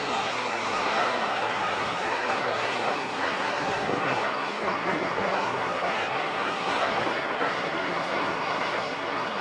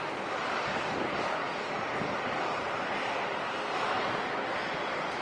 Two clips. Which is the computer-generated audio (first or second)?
first